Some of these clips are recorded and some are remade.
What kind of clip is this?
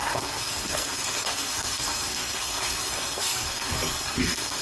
remade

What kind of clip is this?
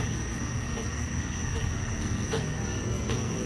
remade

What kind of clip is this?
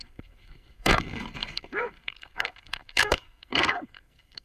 remade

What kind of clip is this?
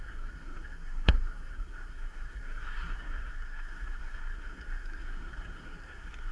remade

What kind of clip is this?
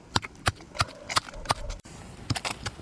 recorded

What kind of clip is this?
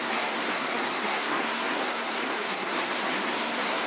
remade